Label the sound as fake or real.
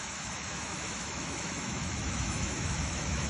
fake